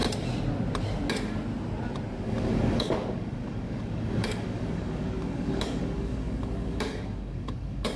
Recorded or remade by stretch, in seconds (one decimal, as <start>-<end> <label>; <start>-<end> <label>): 0.0-2.2 recorded; 2.2-8.0 remade